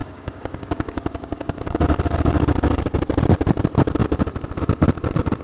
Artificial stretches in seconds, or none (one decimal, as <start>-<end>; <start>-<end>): 0.0-1.8